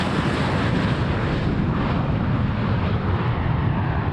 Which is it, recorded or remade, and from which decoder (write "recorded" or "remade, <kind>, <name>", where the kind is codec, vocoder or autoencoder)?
recorded